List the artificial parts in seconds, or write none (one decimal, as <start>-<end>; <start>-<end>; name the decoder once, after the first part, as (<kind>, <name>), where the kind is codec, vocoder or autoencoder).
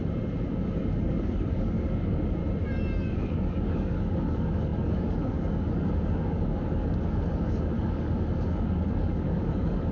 0.5-2.4 (codec, DAC); 3.1-9.9